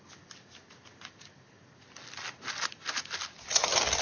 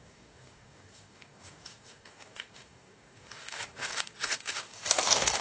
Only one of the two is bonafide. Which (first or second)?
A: first